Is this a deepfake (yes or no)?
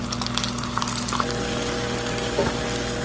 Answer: no